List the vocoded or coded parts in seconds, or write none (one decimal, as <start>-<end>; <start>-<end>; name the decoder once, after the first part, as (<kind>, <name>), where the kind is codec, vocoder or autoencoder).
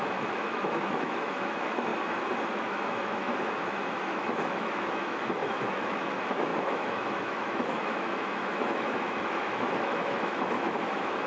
0.0-1.9 (autoencoder, DAC-VAE); 2.5-11.3